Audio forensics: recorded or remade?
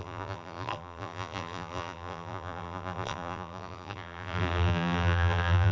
remade